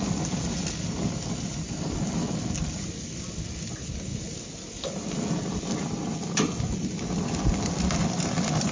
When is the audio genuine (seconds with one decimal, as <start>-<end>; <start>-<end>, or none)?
0.0-8.7